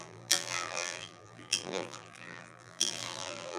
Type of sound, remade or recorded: remade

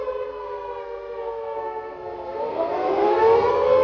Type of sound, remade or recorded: remade